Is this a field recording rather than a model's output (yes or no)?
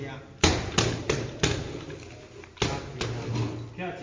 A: yes